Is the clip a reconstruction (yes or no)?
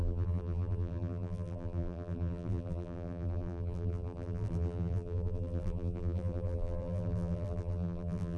yes